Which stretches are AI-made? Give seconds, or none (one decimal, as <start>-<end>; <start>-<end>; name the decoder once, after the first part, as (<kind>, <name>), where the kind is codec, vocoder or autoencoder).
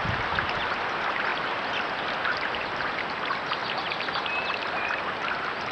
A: none